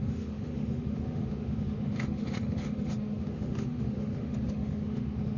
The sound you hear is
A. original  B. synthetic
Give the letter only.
B